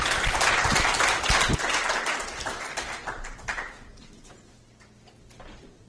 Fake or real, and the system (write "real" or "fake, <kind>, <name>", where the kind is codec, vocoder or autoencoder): real